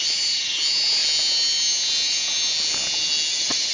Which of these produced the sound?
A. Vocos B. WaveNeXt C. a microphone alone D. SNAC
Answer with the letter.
C